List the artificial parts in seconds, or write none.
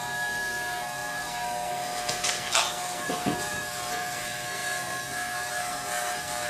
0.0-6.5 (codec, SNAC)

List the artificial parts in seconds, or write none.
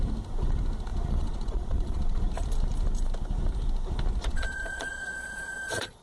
0.9-2.2 (vocoder, Vocos); 4.2-6.0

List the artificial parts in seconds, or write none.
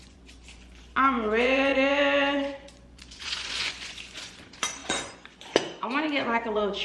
0.0-6.8 (vocoder, Vocos)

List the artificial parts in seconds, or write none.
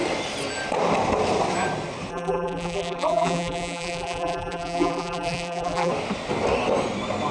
2.1-5.9 (vocoder, BigVGAN v2)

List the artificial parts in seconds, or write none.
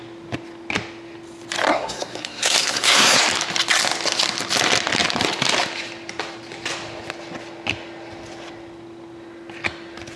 1.7-3.2 (codec, SNAC)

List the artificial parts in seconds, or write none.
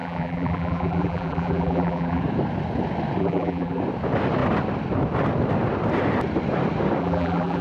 0.0-2.2 (vocoder, BigVGAN v2); 3.2-3.8; 7.0-7.6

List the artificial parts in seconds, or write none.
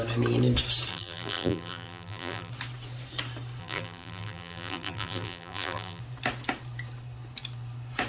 0.9-2.5 (vocoder, BigVGAN v2); 3.6-6.0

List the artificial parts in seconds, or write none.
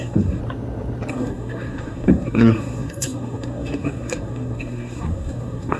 0.0-0.4 (codec, SNAC); 1.1-5.8